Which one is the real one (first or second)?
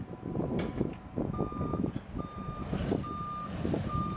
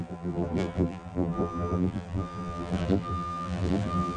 first